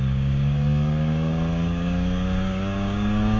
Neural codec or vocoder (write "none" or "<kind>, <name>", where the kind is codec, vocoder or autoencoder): codec, DAC